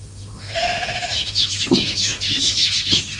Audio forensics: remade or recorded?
remade